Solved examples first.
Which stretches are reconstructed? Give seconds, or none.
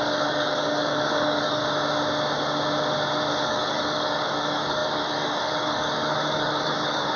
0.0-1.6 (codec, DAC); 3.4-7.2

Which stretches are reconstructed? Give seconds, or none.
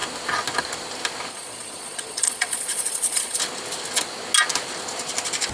1.3-3.4 (vocoder, Vocos)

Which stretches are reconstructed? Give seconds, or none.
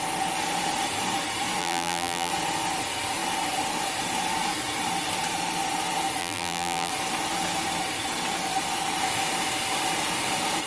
1.6-2.3 (vocoder, BigVGAN v2); 6.2-6.9